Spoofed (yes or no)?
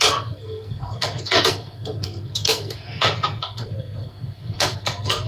yes